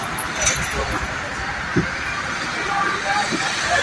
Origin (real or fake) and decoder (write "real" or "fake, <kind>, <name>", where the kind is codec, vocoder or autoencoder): fake, vocoder, BigVGAN v2